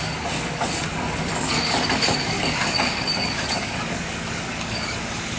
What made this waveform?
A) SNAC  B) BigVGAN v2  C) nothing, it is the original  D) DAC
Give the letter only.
D